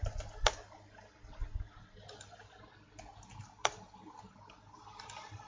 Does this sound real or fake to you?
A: real